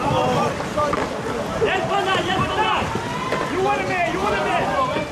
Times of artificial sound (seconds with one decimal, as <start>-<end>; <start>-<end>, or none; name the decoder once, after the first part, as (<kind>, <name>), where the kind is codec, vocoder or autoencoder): 1.5-2.8 (vocoder, BigVGAN v2); 4.2-5.1